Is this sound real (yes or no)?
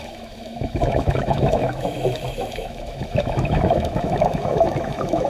no